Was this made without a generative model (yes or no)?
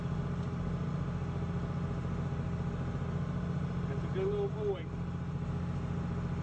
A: yes